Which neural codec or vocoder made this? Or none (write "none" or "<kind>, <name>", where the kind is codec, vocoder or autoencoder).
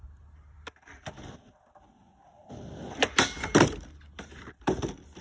none